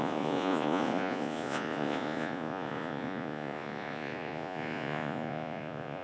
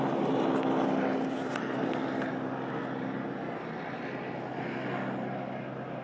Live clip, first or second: second